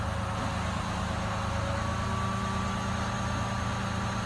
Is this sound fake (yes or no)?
no